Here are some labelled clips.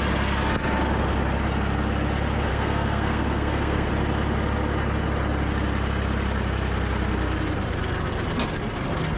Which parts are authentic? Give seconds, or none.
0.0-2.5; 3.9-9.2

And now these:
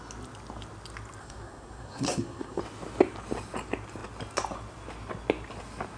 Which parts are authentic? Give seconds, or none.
0.0-1.2; 2.6-6.0

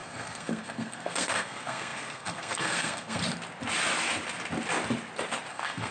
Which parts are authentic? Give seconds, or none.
3.2-5.5

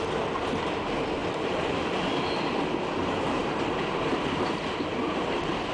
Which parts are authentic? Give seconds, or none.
0.0-5.7

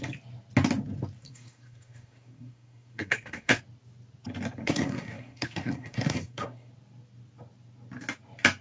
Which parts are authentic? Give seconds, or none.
0.0-1.2; 3.6-4.6; 6.7-8.6

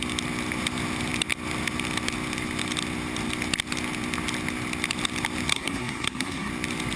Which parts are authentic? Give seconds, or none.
0.0-5.5; 6.5-7.0

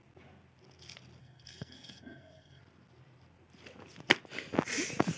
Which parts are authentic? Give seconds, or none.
0.0-1.2; 2.6-5.2